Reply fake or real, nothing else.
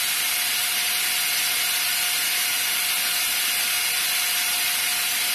real